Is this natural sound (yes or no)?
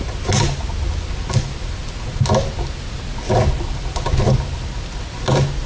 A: yes